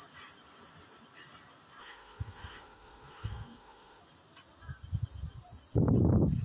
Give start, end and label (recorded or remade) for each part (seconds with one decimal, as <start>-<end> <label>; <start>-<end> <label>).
0.0-1.8 recorded; 1.8-4.0 remade; 4.0-6.4 recorded